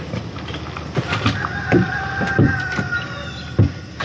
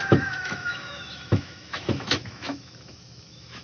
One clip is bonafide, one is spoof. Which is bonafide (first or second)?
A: first